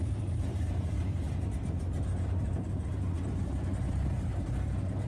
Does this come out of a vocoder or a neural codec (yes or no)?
yes